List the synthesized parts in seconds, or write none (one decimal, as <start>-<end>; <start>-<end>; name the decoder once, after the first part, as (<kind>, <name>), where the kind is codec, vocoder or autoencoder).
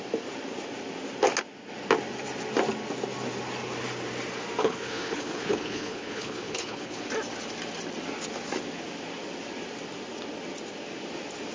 4.6-7.0 (codec, HILCodec)